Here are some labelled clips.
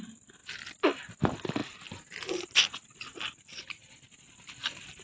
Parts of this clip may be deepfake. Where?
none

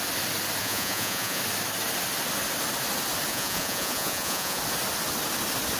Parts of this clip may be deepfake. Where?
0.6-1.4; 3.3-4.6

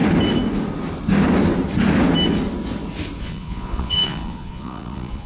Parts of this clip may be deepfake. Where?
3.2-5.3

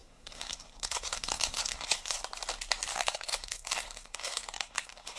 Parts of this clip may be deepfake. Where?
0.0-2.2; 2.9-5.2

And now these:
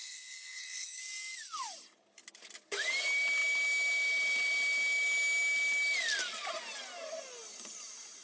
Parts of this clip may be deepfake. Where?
0.0-1.0

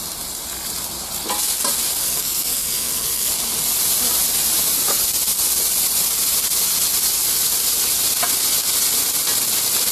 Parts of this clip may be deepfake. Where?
2.0-3.3

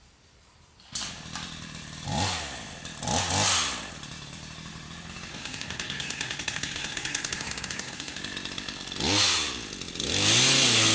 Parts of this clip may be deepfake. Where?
5.3-8.2

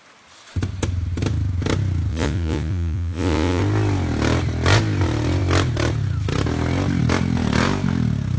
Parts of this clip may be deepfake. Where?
2.1-3.6